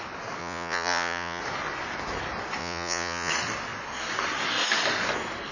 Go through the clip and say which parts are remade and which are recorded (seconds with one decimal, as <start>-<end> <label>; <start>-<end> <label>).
0.0-0.4 recorded; 0.4-1.4 remade; 1.4-2.6 recorded; 2.6-3.3 remade; 3.3-5.5 recorded

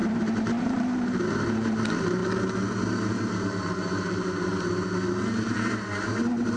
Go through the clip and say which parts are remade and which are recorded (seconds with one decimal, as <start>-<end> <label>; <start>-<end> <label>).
0.0-2.2 remade; 2.2-3.2 recorded; 3.2-4.5 remade; 4.5-5.4 recorded; 5.4-6.6 remade

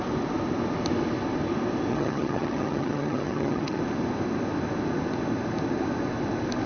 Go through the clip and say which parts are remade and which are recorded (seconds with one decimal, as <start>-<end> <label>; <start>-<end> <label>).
0.0-1.9 recorded; 1.9-3.8 remade; 3.8-6.7 recorded